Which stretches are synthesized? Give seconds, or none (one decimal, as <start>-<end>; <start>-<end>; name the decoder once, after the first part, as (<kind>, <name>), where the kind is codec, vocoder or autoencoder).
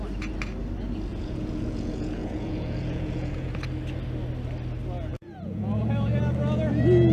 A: 1.1-3.5 (vocoder, Vocos); 5.1-6.2